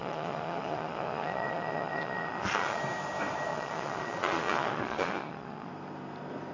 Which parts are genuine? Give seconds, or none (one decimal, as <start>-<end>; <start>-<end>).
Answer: 2.8-3.5; 5.7-6.5